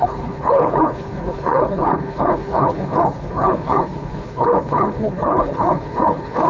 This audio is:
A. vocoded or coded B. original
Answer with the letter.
A